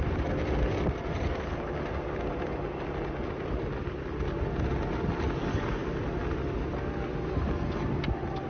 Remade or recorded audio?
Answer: recorded